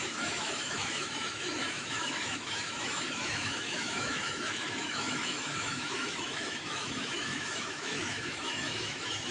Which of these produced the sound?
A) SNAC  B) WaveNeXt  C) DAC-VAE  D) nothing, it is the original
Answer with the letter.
C